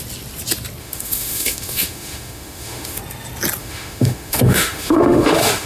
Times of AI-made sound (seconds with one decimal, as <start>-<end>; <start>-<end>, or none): 0.8-3.0; 3.6-5.7